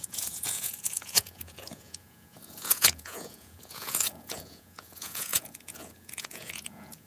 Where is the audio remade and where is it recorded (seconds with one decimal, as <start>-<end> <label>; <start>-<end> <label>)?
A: 0.0-7.1 remade